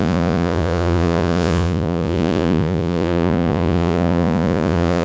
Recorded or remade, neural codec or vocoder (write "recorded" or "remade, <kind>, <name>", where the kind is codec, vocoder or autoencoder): remade, vocoder, Vocos